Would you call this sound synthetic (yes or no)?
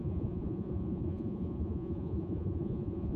yes